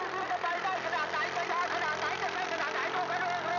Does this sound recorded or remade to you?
recorded